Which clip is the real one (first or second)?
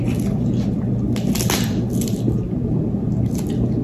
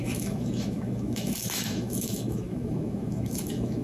first